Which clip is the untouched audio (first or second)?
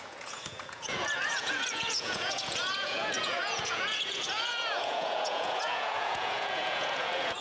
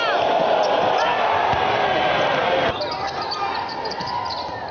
second